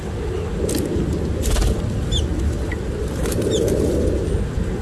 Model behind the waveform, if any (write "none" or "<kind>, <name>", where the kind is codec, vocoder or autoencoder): none